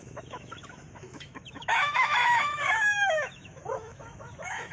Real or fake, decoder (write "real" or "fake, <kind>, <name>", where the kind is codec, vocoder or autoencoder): fake, autoencoder, DAC-VAE